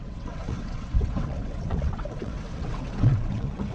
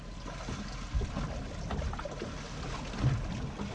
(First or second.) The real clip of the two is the second